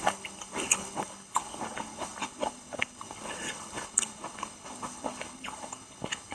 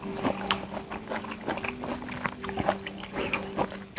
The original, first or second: second